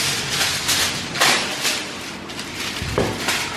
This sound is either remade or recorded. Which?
recorded